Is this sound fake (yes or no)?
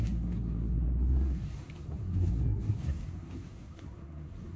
yes